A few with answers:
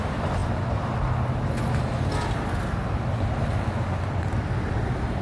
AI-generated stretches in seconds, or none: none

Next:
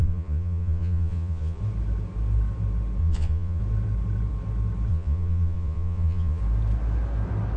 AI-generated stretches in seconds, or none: 0.0-1.6 (vocoder, Vocos); 3.0-3.6; 4.9-6.4

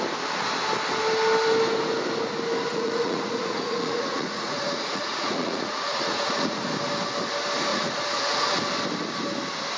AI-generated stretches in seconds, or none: 2.7-6.7 (vocoder, Vocos); 7.7-8.6

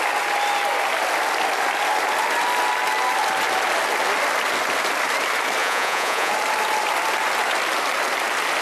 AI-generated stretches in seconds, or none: 5.6-6.3 (vocoder, Vocos)

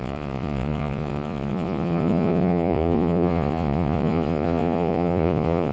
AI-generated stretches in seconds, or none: 0.0-5.7 (vocoder, Vocos)

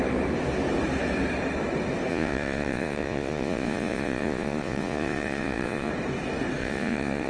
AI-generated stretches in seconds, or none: 2.1-5.9 (vocoder, Vocos); 6.6-7.3